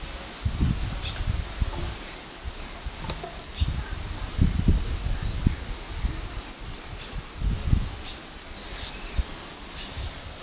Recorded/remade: recorded